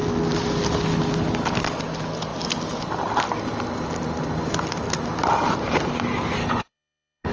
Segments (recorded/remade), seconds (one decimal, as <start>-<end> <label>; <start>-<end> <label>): 0.0-6.4 recorded; 6.4-7.3 remade